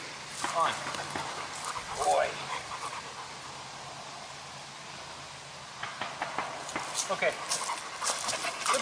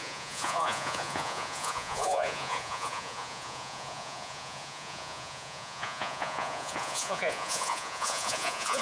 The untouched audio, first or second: first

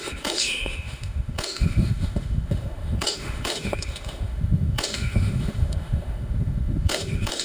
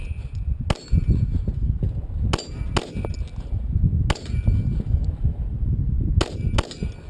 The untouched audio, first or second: second